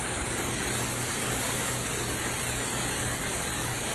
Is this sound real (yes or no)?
no